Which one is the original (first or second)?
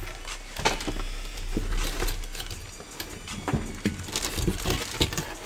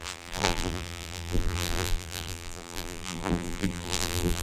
first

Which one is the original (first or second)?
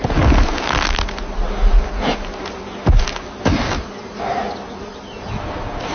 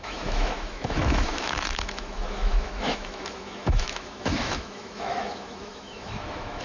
first